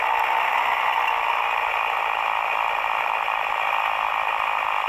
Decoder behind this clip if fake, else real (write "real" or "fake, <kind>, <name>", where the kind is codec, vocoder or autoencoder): real